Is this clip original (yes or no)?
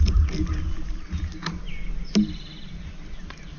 yes